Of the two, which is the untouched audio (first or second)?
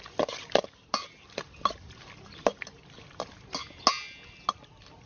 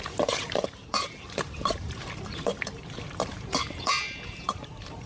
first